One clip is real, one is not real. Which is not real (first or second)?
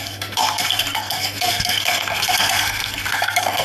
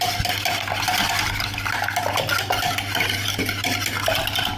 first